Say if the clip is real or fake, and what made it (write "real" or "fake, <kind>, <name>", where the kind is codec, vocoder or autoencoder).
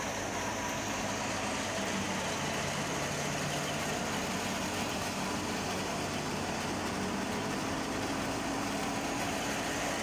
real